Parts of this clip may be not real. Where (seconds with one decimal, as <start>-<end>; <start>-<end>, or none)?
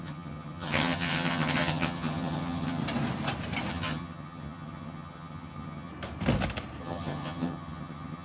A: 0.0-2.8; 3.7-5.9; 6.8-8.2